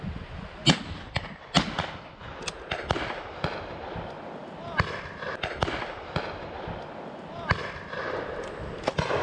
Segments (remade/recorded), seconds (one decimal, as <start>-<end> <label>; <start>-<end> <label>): 0.0-9.2 recorded